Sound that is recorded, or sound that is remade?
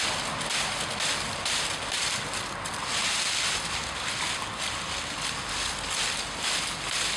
recorded